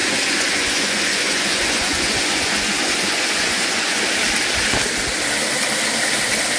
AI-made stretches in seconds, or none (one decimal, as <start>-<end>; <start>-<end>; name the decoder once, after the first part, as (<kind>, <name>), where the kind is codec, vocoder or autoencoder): 0.0-4.0 (vocoder, Vocos)